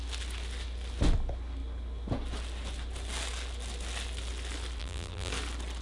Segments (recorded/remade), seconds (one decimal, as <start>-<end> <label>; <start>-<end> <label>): 0.0-4.8 recorded; 4.8-5.3 remade; 5.3-5.8 recorded